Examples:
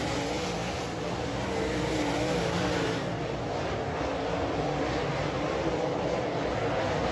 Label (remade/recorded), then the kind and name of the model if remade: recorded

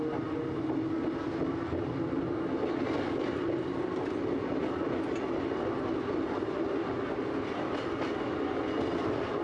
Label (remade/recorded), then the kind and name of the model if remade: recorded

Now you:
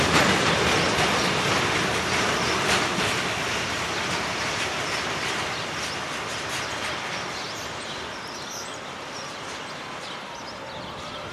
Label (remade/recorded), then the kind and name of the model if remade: recorded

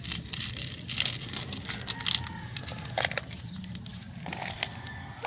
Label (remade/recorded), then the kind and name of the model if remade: recorded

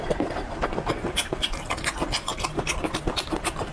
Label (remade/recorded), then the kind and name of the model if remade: recorded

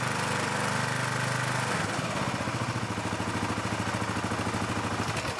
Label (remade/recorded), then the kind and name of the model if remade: recorded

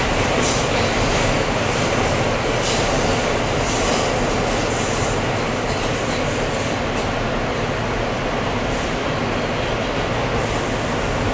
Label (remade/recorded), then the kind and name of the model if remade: recorded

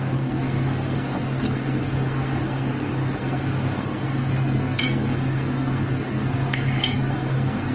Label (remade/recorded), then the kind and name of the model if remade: remade, codec, SNAC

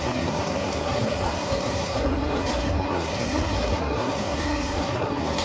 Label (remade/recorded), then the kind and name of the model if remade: remade, codec, SNAC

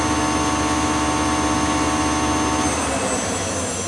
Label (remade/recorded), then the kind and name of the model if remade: recorded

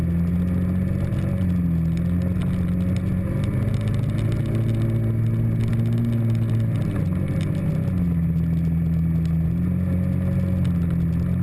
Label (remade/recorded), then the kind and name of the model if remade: recorded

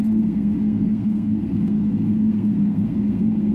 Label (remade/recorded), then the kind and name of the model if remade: remade, codec, SNAC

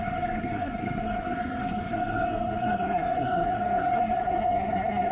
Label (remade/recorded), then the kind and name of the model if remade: remade, codec, SNAC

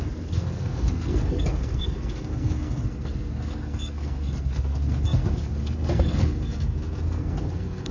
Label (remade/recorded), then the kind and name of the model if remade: remade, codec, SNAC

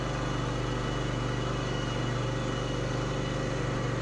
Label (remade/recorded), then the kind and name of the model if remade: recorded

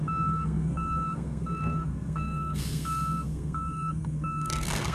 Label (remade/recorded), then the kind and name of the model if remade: remade, codec, SNAC